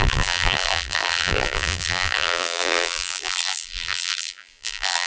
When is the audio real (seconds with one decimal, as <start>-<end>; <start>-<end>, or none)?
none